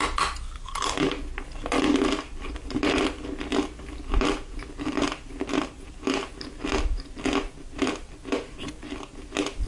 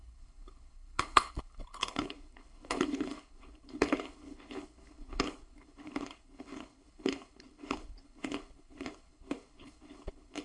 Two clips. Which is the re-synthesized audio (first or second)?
second